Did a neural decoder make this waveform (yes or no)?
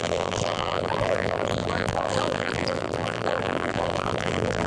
yes